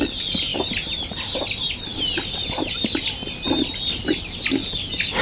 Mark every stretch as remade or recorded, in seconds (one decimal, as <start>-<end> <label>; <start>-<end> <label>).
0.0-5.2 recorded